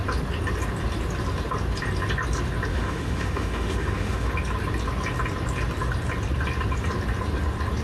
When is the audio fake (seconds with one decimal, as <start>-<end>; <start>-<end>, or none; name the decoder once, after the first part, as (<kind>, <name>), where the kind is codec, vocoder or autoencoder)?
2.7-4.3 (autoencoder, DAC-VAE)